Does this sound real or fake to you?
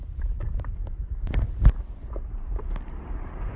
fake